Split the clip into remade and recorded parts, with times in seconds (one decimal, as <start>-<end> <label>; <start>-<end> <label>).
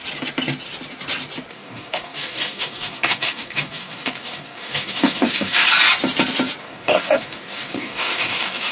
0.0-1.5 recorded; 1.5-5.6 remade; 5.6-6.6 recorded; 6.6-8.7 remade